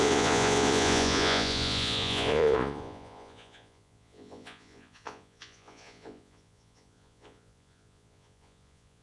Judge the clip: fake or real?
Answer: fake